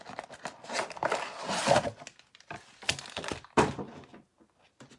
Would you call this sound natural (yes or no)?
yes